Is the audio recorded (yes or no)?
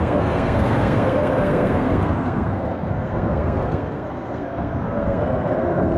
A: no